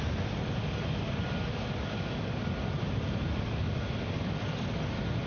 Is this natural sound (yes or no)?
yes